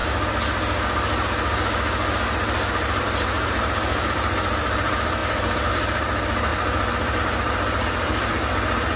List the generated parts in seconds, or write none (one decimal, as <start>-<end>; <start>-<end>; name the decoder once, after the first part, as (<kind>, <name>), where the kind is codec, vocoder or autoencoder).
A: 3.0-9.0 (vocoder, BigVGAN v2)